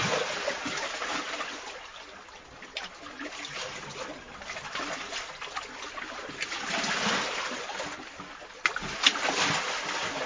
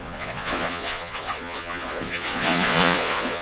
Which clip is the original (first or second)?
first